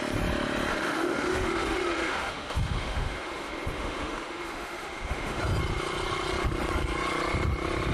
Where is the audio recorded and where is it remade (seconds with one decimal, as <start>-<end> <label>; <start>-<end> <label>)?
0.0-0.7 recorded; 0.7-5.4 remade; 5.4-7.9 recorded